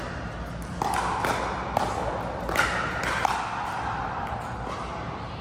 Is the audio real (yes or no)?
yes